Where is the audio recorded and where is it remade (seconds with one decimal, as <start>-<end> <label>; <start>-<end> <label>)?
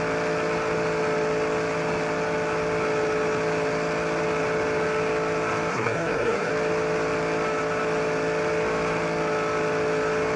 0.0-5.7 recorded; 5.7-6.5 remade; 6.5-10.4 recorded